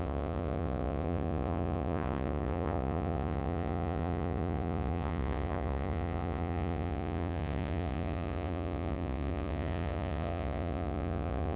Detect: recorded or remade remade